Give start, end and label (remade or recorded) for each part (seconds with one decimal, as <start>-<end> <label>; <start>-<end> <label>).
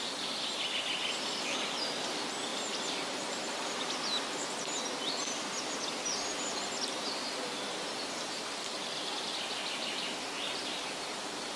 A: 0.0-11.6 recorded